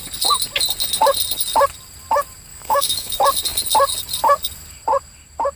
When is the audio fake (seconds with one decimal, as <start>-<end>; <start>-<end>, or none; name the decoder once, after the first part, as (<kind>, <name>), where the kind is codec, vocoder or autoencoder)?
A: 2.5-3.1 (autoencoder, DAC-VAE)